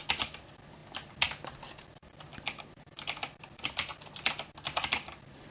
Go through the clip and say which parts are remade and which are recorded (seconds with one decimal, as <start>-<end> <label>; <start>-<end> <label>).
0.0-5.5 recorded